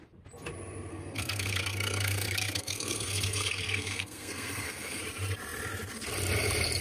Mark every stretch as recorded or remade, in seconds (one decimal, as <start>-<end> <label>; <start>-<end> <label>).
0.0-0.9 recorded; 0.9-5.0 remade; 5.0-6.8 recorded